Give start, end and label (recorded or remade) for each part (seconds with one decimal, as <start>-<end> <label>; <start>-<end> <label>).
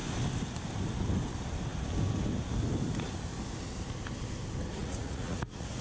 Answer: 0.0-4.8 recorded; 4.8-5.8 remade